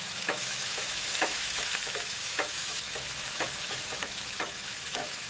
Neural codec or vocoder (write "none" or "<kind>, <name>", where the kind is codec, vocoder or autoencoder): autoencoder, DAC-VAE